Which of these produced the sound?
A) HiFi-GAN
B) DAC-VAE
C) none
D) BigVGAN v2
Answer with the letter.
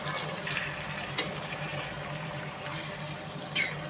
D